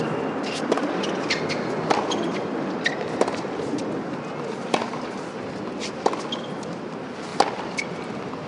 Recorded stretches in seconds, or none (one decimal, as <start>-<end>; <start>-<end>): 0.0-8.5